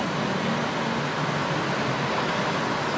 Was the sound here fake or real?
real